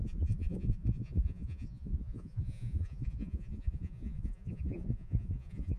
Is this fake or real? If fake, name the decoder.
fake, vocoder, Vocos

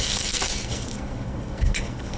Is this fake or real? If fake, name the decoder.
fake, codec, SNAC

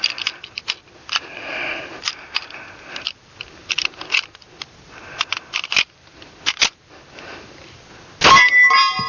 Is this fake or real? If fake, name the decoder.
real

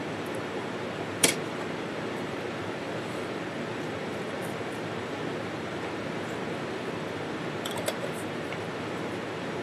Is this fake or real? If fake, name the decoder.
fake, vocoder, BigVGAN v2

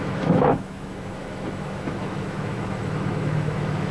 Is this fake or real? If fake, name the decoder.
fake, autoencoder, DAC-VAE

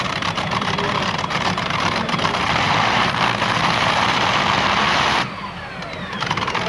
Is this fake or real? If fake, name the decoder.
fake, vocoder, BigVGAN v2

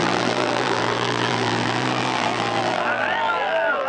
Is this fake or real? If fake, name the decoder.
fake, vocoder, BigVGAN v2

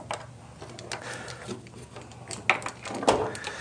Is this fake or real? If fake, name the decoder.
real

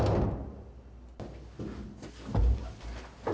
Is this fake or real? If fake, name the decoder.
real